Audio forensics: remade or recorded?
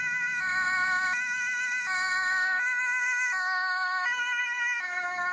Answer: remade